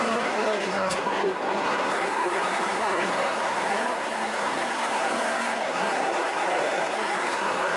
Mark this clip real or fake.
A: fake